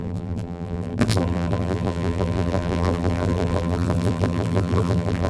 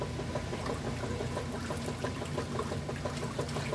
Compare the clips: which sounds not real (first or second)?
first